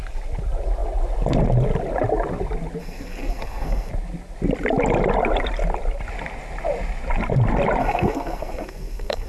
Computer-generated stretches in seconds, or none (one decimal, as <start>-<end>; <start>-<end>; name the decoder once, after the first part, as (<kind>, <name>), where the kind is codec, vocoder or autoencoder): 2.8-3.9 (codec, SNAC); 7.8-9.3